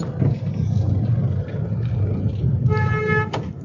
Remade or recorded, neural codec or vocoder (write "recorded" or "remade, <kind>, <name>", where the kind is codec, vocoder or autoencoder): recorded